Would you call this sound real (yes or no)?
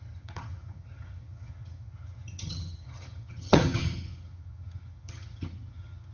no